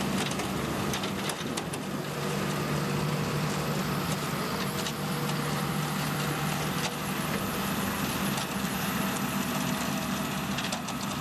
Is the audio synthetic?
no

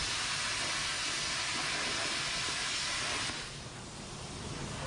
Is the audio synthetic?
no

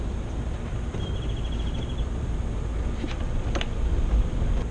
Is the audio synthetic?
yes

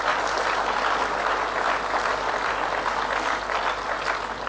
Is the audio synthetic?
no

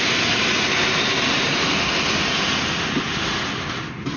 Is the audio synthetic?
no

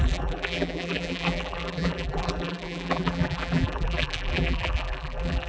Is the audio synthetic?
yes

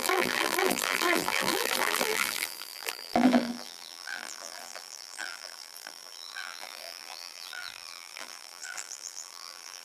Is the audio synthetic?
yes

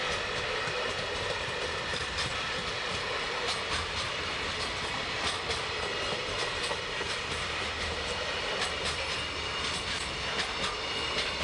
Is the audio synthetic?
yes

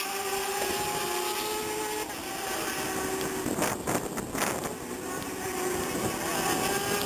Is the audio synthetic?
no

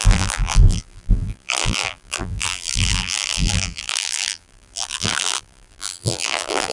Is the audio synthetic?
yes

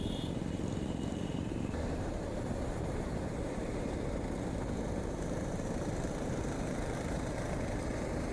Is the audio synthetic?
yes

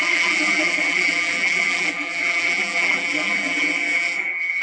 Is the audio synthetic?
yes